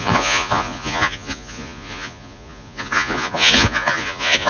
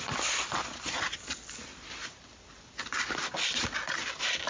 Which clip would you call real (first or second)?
second